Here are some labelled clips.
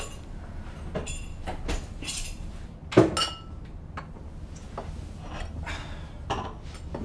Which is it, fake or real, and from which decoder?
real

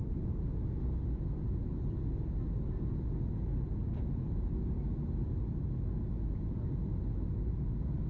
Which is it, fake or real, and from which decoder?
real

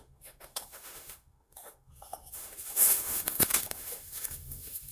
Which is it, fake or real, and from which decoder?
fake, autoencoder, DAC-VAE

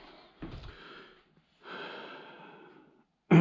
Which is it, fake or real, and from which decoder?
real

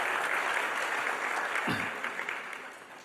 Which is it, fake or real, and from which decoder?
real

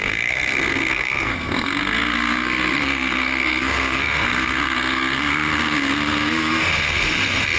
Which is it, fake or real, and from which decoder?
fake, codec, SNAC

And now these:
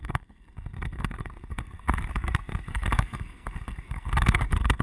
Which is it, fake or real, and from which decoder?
fake, codec, SNAC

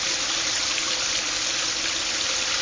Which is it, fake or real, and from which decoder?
real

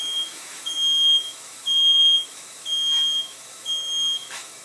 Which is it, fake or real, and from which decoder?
fake, autoencoder, DAC-VAE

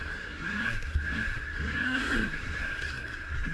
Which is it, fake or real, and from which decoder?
fake, codec, SNAC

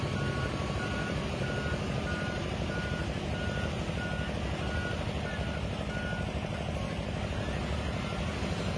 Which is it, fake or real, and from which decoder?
real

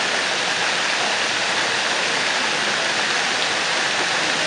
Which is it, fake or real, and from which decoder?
real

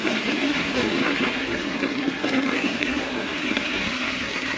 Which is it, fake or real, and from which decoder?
fake, codec, SNAC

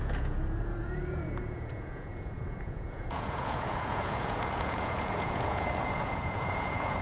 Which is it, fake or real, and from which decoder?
fake, vocoder, Vocos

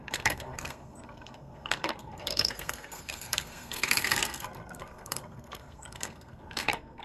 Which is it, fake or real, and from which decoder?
fake, codec, SNAC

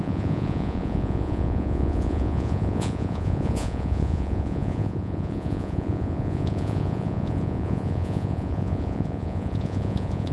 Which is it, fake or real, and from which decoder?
fake, vocoder, Vocos